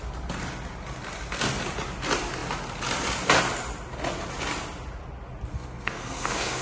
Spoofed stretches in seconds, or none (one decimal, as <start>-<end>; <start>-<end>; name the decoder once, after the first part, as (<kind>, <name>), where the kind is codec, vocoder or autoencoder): 5.5-6.6 (codec, SNAC)